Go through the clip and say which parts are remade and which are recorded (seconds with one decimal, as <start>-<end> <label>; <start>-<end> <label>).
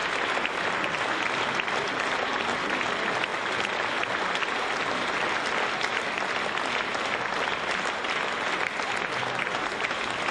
0.0-10.3 recorded